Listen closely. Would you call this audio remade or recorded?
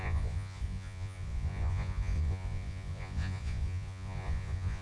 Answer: remade